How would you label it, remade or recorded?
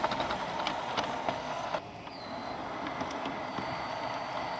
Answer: recorded